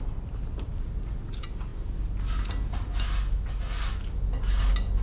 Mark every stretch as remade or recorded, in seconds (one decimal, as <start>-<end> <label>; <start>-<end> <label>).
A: 0.0-5.0 recorded